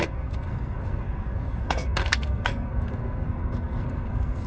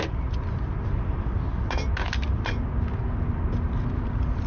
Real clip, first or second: second